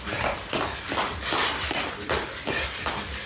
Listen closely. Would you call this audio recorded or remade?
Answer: recorded